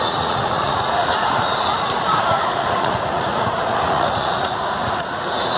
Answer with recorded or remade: remade